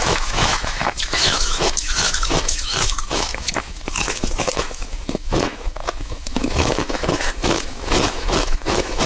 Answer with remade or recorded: remade